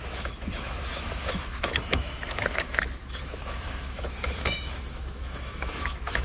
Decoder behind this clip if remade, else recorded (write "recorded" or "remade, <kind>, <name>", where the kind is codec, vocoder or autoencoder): remade, autoencoder, DAC-VAE